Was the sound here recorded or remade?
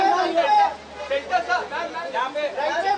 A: recorded